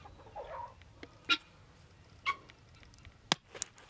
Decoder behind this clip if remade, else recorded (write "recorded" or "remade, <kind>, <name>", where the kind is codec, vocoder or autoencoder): recorded